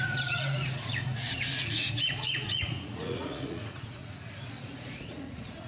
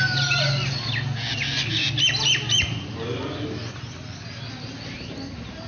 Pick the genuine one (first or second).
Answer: second